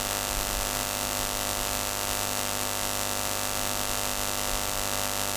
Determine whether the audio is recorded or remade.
recorded